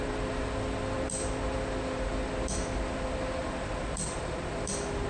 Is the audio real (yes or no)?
no